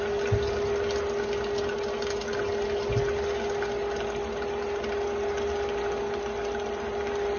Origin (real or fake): real